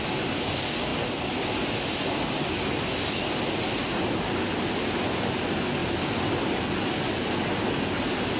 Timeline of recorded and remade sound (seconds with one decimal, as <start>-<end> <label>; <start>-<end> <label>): 0.0-0.9 recorded; 0.9-3.2 remade; 3.2-5.8 recorded; 5.8-6.7 remade; 6.7-8.4 recorded